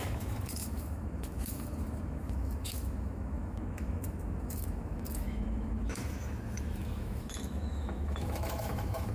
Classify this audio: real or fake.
fake